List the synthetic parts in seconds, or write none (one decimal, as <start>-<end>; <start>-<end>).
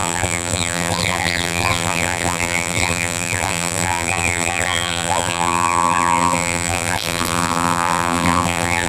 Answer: 0.0-8.9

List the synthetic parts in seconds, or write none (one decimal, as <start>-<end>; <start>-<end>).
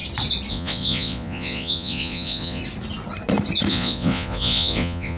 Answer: 0.5-2.6; 3.7-5.2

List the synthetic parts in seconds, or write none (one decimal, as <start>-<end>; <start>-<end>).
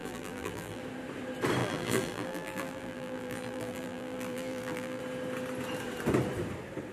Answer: 0.0-0.8; 1.6-5.0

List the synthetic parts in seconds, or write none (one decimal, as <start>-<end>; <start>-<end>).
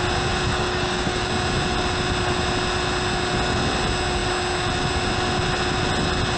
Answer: 0.5-1.3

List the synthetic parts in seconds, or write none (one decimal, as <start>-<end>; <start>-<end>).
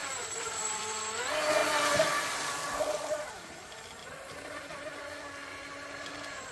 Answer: none